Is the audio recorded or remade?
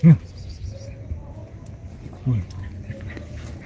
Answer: recorded